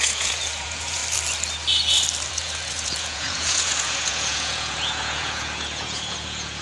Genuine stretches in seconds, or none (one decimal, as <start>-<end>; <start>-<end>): 1.0-2.3